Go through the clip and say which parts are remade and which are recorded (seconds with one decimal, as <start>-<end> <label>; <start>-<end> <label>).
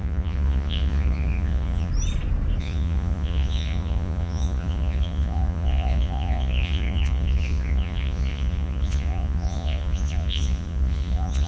0.0-1.9 remade; 1.9-2.6 recorded; 2.6-11.5 remade